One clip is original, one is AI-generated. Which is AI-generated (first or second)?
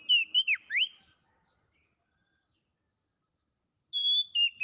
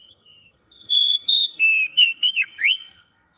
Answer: second